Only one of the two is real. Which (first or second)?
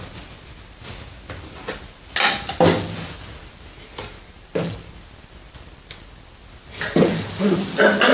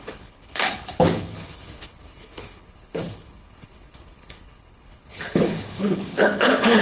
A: first